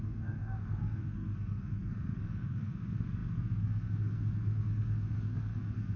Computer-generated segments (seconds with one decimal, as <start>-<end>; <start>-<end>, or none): 0.0-6.0